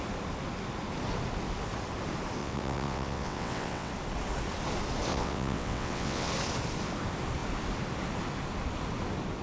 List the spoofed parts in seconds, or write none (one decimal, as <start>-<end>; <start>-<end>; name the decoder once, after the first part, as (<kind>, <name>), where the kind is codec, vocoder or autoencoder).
2.4-3.9 (vocoder, WaveNeXt); 5.1-6.3

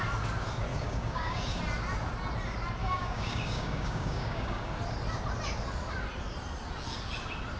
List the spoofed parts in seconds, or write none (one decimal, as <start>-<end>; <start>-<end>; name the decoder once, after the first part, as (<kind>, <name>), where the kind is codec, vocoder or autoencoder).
0.7-1.6 (codec, DAC); 2.8-4.7

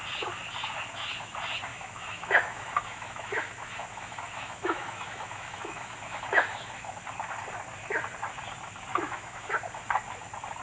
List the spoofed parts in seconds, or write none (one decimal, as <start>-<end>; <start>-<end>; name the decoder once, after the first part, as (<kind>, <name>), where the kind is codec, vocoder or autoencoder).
1.7-6.7 (autoencoder, DAC-VAE); 8.9-9.5